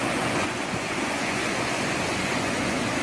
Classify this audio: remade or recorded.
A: remade